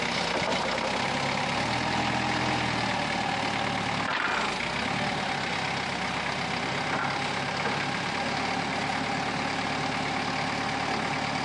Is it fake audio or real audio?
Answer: real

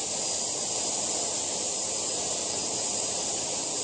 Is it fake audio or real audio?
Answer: real